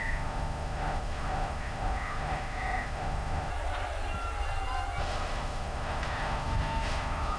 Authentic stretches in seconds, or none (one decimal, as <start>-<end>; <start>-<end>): 3.5-5.0